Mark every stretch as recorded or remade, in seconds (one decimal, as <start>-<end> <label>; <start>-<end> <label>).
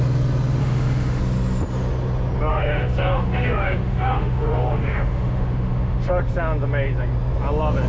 0.0-0.6 recorded; 0.6-1.2 remade; 1.2-2.5 recorded; 2.5-6.1 remade; 6.1-7.9 recorded